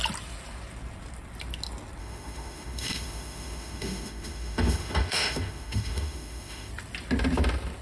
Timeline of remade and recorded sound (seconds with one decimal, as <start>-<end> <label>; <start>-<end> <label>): 0.0-2.0 recorded; 2.0-6.7 remade; 6.7-7.8 recorded